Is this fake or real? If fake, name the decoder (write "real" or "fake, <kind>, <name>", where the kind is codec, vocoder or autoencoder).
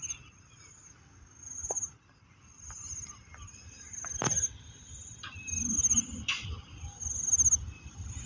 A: real